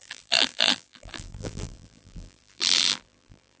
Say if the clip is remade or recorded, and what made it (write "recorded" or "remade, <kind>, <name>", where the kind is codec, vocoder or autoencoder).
remade, vocoder, BigVGAN v2